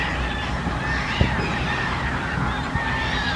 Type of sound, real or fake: real